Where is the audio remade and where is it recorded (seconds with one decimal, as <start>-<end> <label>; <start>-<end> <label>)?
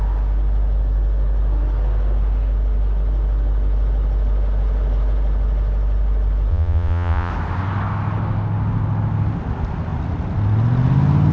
0.0-6.5 recorded; 6.5-7.3 remade; 7.3-11.3 recorded